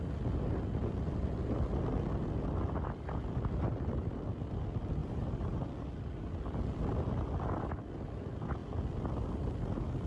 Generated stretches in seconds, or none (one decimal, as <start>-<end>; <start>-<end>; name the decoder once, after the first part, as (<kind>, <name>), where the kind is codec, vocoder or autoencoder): 5.0-5.6 (vocoder, BigVGAN v2)